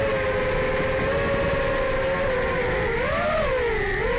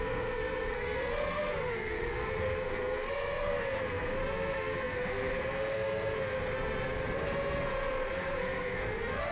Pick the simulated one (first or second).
second